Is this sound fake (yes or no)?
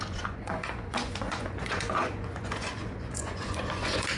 yes